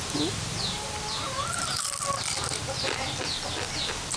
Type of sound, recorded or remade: recorded